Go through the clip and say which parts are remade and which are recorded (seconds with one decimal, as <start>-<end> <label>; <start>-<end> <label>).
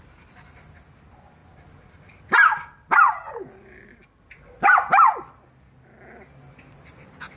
0.0-7.4 recorded